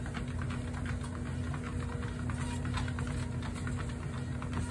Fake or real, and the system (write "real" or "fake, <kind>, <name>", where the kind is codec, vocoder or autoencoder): real